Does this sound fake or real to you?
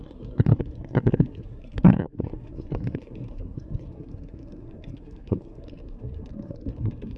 fake